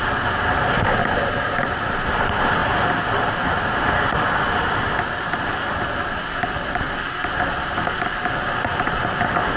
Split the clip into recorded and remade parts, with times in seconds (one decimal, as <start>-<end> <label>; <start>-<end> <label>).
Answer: 0.0-9.6 recorded

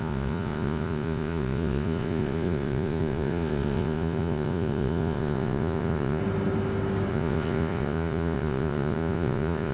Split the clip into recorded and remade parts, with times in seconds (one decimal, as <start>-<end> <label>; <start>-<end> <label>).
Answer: 0.0-6.2 remade; 6.2-7.1 recorded; 7.1-9.7 remade

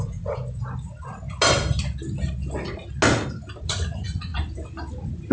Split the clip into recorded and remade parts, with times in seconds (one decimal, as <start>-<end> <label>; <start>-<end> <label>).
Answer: 0.0-0.4 remade; 0.4-3.6 recorded; 3.6-4.3 remade; 4.3-5.3 recorded

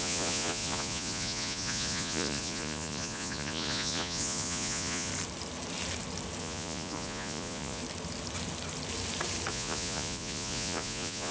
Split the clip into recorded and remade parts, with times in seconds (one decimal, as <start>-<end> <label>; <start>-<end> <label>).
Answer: 0.0-5.1 remade; 5.1-6.4 recorded; 6.4-7.8 remade; 7.8-9.5 recorded; 9.5-11.3 remade

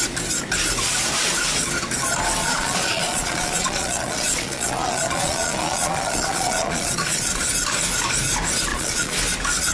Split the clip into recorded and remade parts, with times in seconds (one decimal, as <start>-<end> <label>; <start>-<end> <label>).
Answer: 0.0-2.4 recorded; 2.4-7.4 remade; 7.4-8.7 recorded; 8.7-9.2 remade; 9.2-9.7 recorded

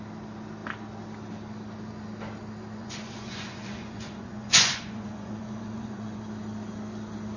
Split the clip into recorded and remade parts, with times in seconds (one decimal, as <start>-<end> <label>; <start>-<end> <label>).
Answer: 0.0-2.8 recorded; 2.8-6.2 remade; 6.2-7.4 recorded